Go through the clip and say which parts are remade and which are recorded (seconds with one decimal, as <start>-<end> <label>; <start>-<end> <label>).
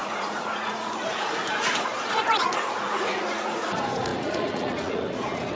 0.0-5.5 remade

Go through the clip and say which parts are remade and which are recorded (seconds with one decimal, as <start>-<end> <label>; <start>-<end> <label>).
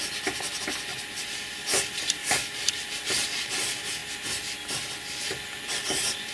0.0-2.2 recorded; 2.2-2.8 remade; 2.8-6.3 recorded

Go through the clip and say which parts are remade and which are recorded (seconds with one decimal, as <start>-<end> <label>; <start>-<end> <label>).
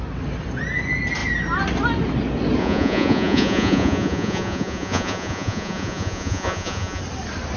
0.0-2.6 recorded; 2.6-7.0 remade; 7.0-7.6 recorded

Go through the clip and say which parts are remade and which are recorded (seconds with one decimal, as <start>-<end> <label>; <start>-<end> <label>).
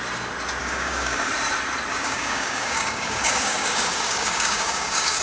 0.0-0.6 recorded; 0.6-1.3 remade; 1.3-1.9 recorded; 1.9-5.2 remade